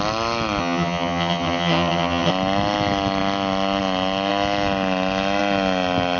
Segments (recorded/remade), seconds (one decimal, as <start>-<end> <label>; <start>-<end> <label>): 0.0-0.6 recorded; 0.6-2.3 remade; 2.3-6.2 recorded